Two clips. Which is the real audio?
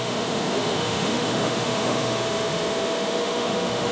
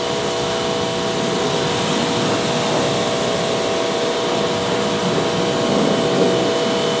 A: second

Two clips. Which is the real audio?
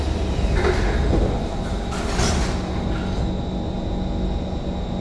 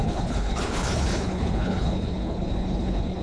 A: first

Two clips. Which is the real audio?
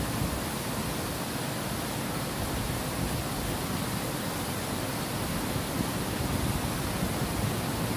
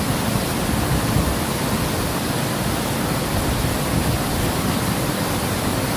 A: first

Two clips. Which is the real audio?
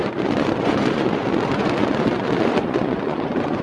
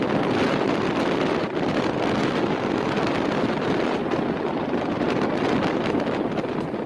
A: second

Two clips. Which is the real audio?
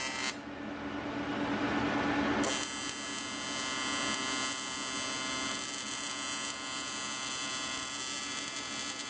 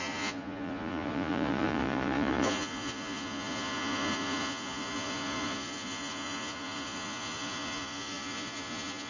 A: first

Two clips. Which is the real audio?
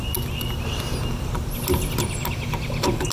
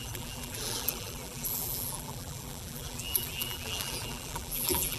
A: first